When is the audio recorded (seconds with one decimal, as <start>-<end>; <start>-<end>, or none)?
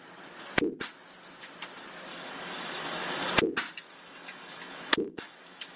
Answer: 0.0-2.1; 3.3-3.9